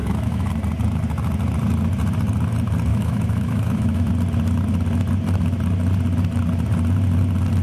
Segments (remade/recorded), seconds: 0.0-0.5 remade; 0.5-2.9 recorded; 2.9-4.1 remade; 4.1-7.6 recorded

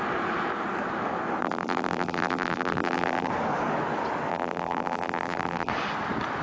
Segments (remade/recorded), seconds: 0.0-1.4 recorded; 1.4-3.3 remade; 3.3-4.3 recorded; 4.3-5.7 remade; 5.7-6.4 recorded